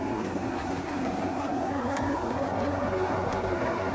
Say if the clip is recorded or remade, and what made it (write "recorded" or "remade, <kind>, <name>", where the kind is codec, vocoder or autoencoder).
remade, codec, SNAC